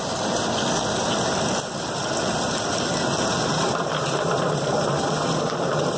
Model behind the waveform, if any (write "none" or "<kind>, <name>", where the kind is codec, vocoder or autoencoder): none